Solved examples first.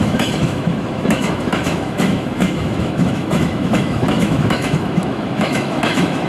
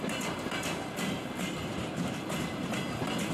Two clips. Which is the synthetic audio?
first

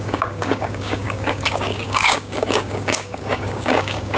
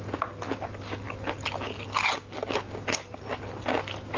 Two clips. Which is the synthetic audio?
first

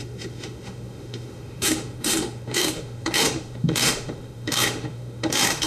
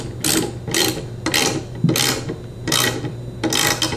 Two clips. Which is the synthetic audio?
first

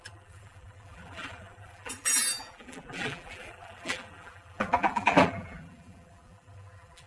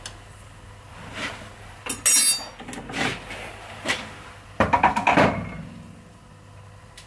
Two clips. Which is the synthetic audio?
first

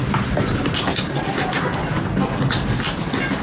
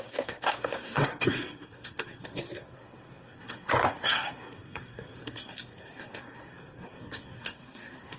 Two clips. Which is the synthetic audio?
second